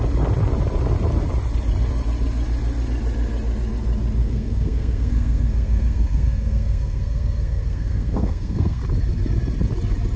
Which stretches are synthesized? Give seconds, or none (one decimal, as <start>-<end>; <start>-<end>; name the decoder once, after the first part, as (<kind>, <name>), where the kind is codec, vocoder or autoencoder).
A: 4.2-8.8 (codec, SNAC)